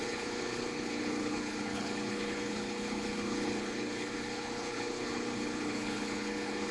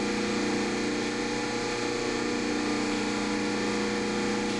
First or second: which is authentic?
second